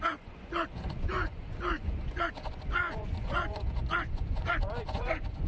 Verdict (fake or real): fake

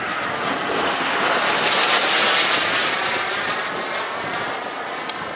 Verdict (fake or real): real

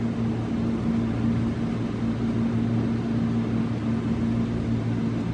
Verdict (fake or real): real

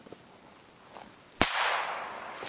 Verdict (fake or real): real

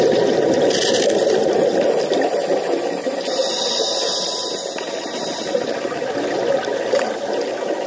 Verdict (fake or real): real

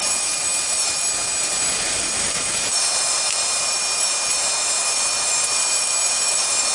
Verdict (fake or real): fake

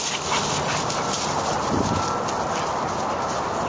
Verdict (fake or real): real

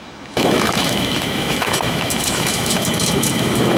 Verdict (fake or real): fake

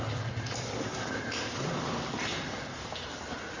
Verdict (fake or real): real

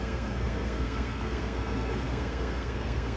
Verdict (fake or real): fake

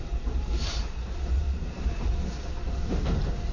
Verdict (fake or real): fake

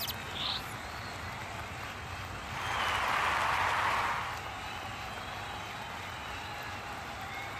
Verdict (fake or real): real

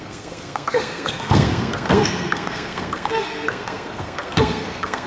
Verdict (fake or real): fake